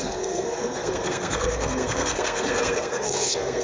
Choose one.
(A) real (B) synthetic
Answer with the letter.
B